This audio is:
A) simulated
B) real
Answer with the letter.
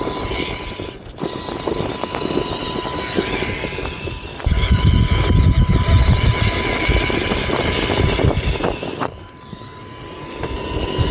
B